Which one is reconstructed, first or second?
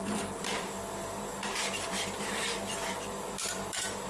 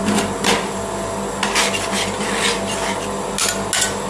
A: first